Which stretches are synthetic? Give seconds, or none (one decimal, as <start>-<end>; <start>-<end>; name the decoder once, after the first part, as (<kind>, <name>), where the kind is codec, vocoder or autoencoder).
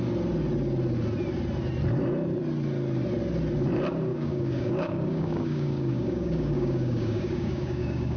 4.1-8.2 (codec, DAC)